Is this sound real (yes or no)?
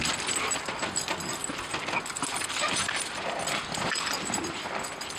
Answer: yes